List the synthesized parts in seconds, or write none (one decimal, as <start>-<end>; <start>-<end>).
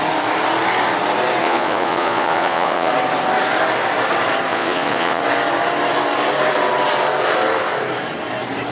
1.4-2.9; 4.5-5.2